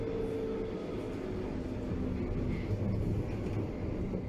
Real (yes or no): yes